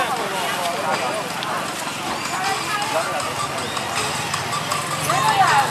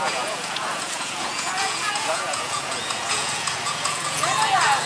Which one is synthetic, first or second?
second